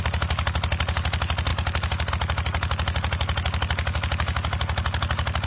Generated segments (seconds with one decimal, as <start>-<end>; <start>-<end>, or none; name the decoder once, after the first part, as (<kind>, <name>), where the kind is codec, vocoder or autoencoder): none